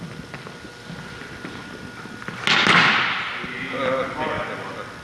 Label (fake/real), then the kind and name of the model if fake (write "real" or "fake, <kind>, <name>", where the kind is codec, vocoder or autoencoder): real